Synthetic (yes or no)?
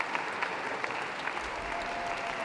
no